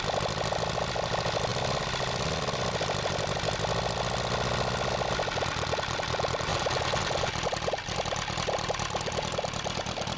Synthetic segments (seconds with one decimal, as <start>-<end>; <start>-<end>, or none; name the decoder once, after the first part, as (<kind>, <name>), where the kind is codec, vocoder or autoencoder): none